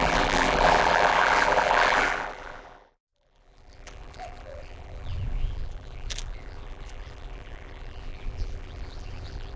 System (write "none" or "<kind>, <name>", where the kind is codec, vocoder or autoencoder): vocoder, BigVGAN v2